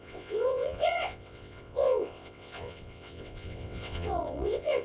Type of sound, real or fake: fake